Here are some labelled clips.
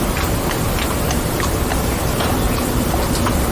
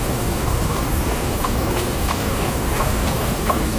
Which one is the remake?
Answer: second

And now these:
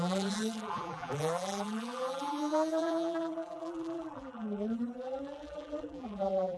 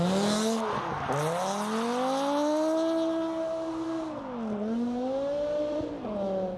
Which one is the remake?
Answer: first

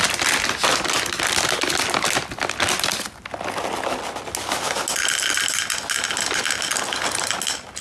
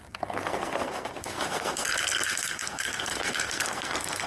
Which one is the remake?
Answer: second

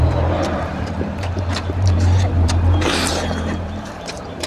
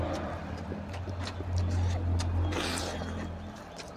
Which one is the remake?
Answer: first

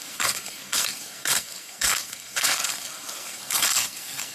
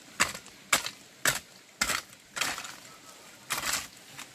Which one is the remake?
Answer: first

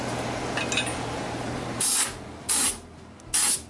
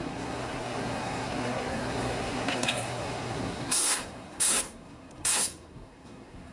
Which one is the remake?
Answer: second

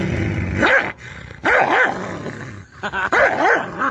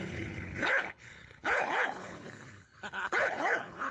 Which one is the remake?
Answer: second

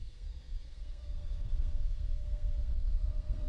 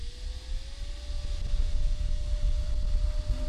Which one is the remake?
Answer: first